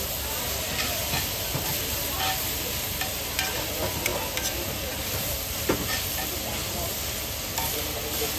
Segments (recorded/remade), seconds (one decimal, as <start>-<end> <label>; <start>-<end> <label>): 0.0-8.4 recorded